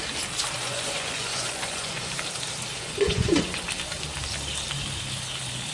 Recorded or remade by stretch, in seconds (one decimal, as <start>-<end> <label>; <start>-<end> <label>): 0.0-0.6 recorded; 0.6-2.1 remade; 2.1-2.7 recorded; 2.7-3.6 remade; 3.6-5.7 recorded